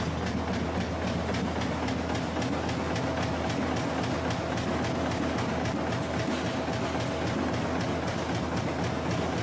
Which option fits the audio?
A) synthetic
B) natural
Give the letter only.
B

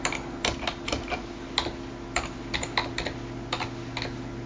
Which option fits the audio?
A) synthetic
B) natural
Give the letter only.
B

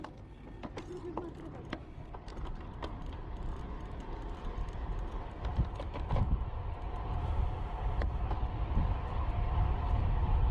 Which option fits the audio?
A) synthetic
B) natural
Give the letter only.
B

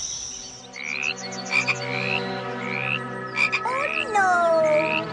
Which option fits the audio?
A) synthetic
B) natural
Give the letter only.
B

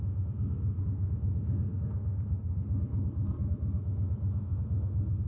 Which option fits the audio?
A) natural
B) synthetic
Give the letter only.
B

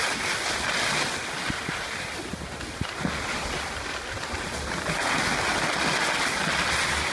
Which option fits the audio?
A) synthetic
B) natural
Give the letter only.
B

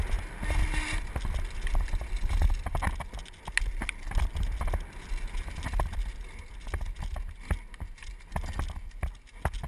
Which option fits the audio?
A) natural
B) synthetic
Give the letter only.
A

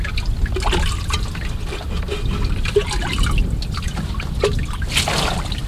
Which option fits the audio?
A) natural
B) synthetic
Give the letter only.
A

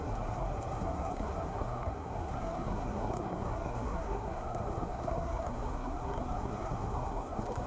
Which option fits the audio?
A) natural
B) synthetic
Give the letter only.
B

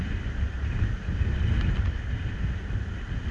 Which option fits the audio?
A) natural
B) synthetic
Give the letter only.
A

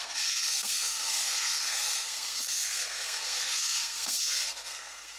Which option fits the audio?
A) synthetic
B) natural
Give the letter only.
A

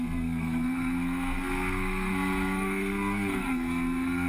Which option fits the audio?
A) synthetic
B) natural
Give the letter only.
A